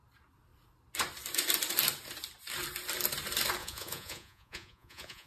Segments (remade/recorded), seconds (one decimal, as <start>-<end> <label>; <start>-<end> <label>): 0.0-3.6 recorded; 3.6-5.3 remade